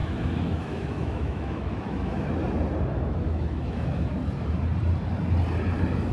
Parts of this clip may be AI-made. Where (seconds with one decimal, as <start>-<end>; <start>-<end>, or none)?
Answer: 0.0-2.3; 2.9-4.1